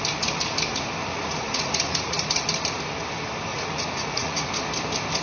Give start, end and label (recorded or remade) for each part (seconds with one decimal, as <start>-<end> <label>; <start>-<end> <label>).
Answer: 0.0-1.0 recorded; 1.0-2.3 remade; 2.3-3.5 recorded; 3.5-4.5 remade; 4.5-5.2 recorded